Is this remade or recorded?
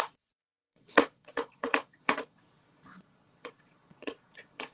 remade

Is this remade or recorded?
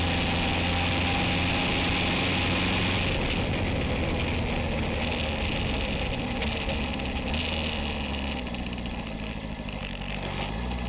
recorded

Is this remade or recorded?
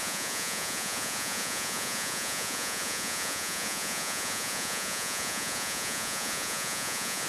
remade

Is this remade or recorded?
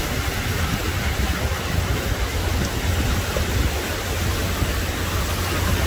recorded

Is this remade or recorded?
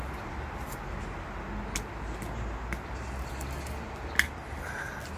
recorded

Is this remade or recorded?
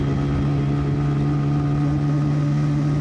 recorded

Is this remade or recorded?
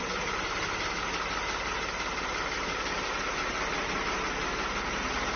recorded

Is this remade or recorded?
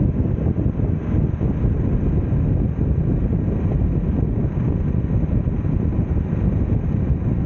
recorded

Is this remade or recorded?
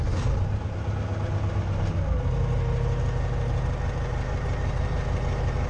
recorded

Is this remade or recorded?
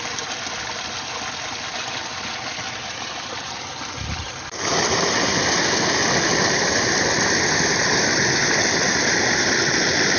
recorded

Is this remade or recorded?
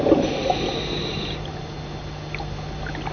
recorded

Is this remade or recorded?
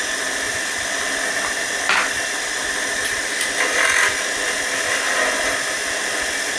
recorded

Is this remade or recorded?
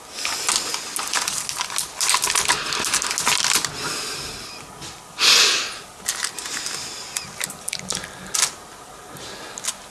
recorded